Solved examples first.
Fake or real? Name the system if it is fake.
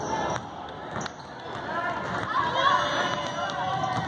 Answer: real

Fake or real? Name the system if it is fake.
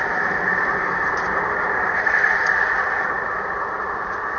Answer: fake, vocoder, BigVGAN v2